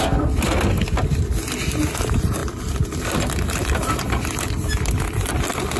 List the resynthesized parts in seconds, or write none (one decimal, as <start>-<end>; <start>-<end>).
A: none